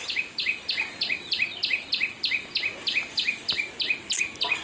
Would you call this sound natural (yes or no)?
yes